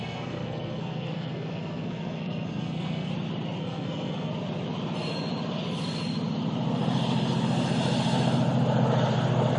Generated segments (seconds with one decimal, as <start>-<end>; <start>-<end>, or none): 0.0-3.1; 3.6-4.3